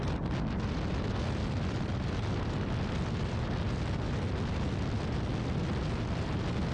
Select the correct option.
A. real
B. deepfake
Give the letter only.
A